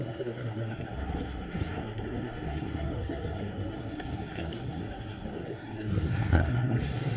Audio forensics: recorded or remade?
remade